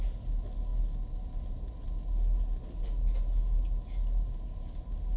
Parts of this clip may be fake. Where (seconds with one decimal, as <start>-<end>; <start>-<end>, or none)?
none